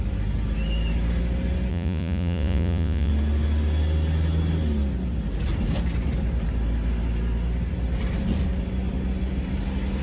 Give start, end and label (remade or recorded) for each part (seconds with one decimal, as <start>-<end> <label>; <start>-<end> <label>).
0.0-1.7 recorded; 1.7-3.1 remade; 3.1-10.0 recorded